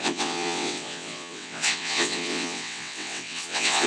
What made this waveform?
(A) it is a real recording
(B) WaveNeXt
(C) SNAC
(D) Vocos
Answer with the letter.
B